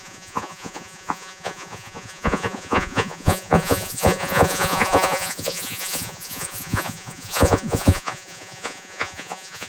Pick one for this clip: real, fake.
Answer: fake